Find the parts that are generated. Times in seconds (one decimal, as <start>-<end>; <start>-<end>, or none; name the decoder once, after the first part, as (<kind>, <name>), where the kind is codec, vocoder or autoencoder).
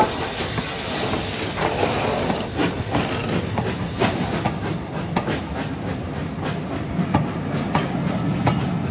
none